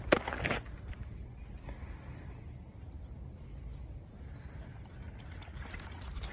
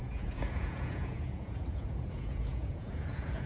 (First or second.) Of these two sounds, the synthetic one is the second